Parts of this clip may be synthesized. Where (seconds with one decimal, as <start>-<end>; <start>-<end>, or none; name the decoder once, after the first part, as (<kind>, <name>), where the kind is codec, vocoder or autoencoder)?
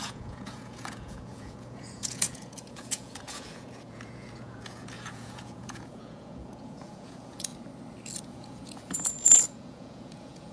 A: 0.0-7.5 (vocoder, Vocos); 8.2-10.5